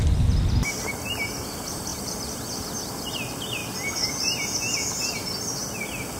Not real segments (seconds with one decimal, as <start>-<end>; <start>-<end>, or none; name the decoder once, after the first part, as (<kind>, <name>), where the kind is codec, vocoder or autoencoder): none